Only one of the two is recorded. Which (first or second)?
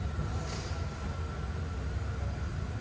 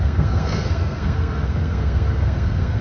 first